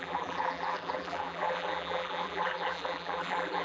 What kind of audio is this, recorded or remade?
remade